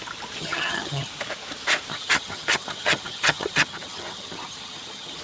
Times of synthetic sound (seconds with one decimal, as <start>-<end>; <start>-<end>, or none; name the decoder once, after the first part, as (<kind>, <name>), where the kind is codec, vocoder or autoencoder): 0.4-1.1 (vocoder, HiFi-GAN); 1.9-5.2

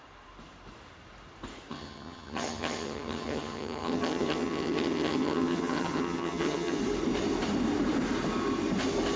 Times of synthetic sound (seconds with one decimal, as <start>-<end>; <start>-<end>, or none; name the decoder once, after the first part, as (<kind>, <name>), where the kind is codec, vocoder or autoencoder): 1.7-6.8 (vocoder, HiFi-GAN)

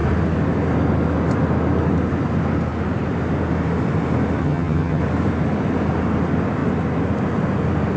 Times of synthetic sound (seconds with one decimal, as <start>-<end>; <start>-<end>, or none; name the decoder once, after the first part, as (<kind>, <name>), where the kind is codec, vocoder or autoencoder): 4.4-5.0 (vocoder, HiFi-GAN)

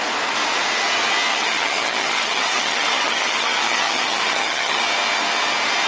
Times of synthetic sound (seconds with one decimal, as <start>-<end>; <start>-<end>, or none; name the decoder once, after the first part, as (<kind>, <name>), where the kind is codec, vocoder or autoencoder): 1.3-4.8 (vocoder, HiFi-GAN)

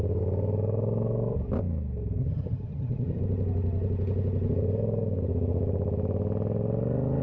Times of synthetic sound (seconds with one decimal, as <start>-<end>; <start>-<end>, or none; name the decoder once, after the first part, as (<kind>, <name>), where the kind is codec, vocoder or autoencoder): 2.2-3.2 (vocoder, HiFi-GAN)